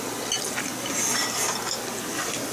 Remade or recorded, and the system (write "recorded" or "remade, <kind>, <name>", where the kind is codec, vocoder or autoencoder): recorded